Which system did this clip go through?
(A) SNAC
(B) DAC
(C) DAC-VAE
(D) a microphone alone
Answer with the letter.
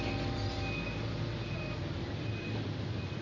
D